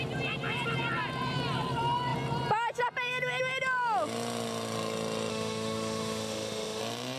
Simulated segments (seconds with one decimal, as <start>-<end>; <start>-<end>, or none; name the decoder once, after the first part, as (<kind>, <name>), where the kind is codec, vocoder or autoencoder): 5.3-6.8 (autoencoder, DAC-VAE)